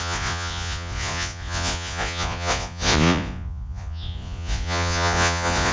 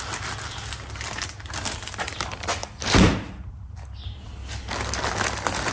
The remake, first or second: first